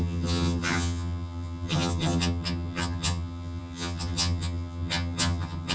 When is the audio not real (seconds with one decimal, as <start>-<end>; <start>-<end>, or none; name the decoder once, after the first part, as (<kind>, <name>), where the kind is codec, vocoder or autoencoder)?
0.0-5.7 (vocoder, HiFi-GAN)